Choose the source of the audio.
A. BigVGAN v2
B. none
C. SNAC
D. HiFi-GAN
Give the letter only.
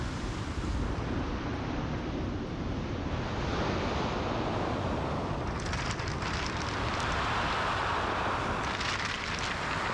B